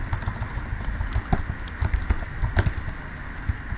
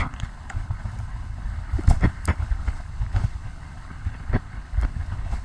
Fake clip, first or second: second